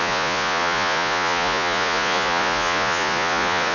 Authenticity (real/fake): fake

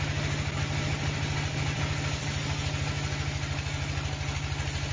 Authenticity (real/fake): real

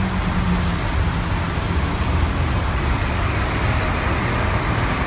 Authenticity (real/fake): real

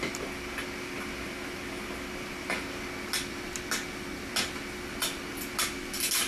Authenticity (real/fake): real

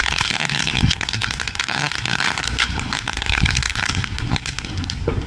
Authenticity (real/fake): fake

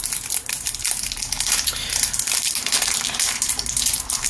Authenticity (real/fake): real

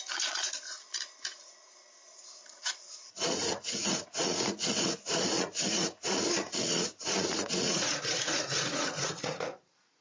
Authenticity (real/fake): fake